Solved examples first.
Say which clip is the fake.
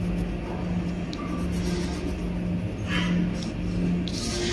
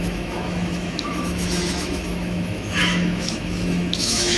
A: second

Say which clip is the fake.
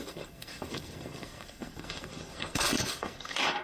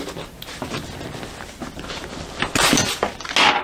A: first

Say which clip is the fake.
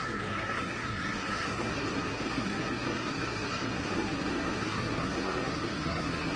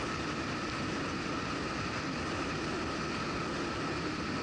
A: first